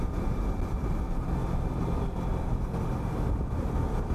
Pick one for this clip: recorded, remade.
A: recorded